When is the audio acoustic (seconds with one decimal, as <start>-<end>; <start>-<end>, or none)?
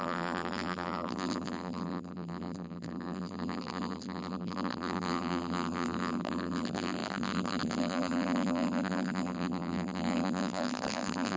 none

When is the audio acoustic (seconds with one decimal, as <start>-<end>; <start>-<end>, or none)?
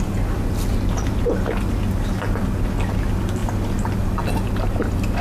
0.0-5.2